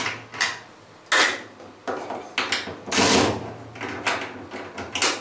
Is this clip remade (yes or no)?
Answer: no